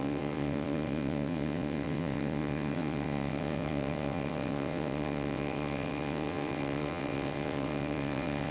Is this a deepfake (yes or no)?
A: yes